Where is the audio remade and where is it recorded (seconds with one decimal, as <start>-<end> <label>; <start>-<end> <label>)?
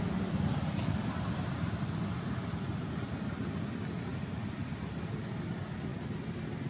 0.0-1.0 recorded; 1.0-1.8 remade; 1.8-6.7 recorded